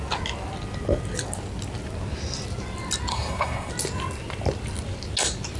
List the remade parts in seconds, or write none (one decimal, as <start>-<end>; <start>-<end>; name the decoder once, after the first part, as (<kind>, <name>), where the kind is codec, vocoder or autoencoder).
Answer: 3.1-3.7 (codec, SNAC)